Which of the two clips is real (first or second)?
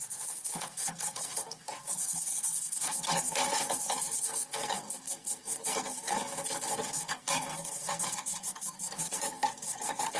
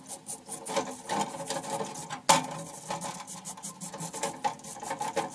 second